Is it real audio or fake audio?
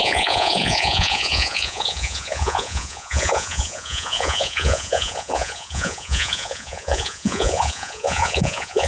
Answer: fake